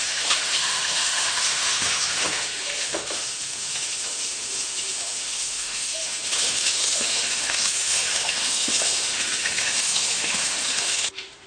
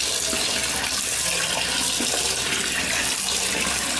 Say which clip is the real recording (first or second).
second